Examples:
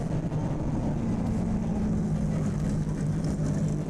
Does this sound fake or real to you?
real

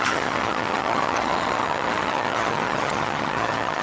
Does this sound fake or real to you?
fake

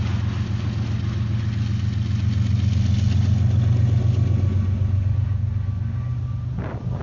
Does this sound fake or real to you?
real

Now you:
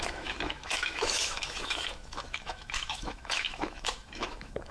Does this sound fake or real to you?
fake